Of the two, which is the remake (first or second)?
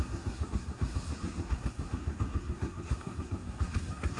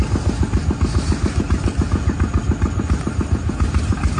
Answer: first